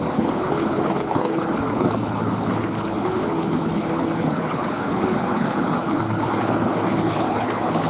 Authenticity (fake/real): fake